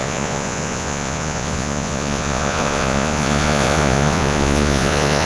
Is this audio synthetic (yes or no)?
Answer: yes